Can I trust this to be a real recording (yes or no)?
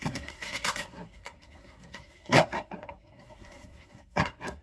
no